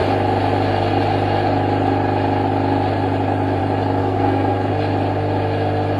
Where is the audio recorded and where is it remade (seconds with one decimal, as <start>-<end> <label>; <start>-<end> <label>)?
0.0-4.0 recorded; 4.0-4.7 remade; 4.7-6.0 recorded